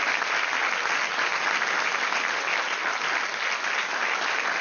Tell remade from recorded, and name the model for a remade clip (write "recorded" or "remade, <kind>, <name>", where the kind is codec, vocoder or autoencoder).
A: recorded